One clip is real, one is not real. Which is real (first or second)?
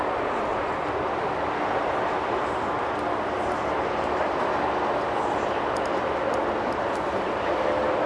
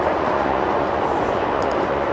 first